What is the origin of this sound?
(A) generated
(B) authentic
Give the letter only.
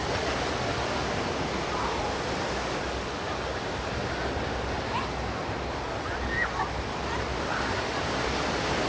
B